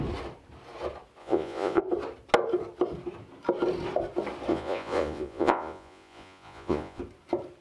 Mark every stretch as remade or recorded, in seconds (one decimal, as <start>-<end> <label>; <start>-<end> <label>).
0.0-1.2 recorded; 1.2-1.8 remade; 1.8-4.5 recorded; 4.5-7.0 remade; 7.0-7.6 recorded

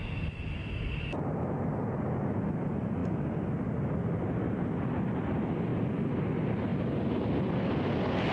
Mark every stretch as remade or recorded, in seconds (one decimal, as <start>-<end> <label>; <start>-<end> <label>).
0.0-8.3 recorded

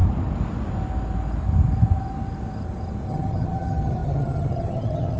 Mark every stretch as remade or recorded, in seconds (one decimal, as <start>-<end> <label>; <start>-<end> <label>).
0.0-3.1 recorded; 3.1-5.2 remade

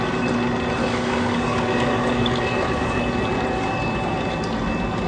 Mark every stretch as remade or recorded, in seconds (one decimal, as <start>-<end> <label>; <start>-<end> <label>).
0.0-0.8 recorded; 0.8-3.0 remade; 3.0-5.1 recorded

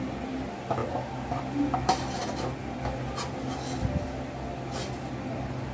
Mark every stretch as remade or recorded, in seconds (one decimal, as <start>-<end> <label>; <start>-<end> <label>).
0.0-5.7 recorded

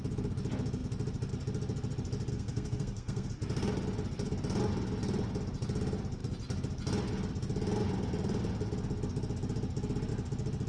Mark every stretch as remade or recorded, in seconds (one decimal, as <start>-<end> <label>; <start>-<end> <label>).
0.0-2.3 recorded; 2.3-3.3 remade; 3.3-10.7 recorded